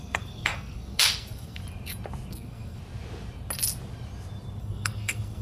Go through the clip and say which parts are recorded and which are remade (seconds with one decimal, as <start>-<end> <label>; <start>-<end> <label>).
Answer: 0.0-1.6 remade; 1.6-2.3 recorded; 2.3-2.8 remade; 2.8-4.6 recorded; 4.6-5.4 remade